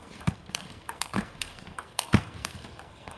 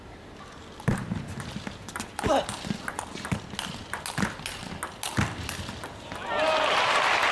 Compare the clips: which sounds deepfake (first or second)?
first